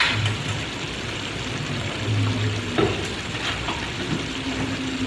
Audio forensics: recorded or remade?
recorded